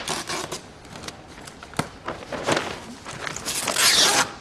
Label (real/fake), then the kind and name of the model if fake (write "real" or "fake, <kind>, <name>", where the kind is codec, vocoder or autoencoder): real